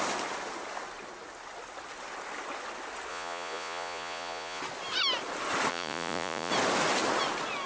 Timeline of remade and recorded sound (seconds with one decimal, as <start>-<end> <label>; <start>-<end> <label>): 0.0-3.1 recorded; 3.1-4.6 remade; 4.6-5.7 recorded; 5.7-6.5 remade; 6.5-7.7 recorded